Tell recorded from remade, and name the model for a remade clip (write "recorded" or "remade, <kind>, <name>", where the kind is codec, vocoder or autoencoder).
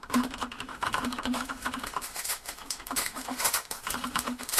remade, autoencoder, DAC-VAE